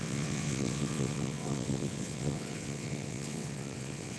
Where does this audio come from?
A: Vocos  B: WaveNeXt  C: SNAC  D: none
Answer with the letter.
B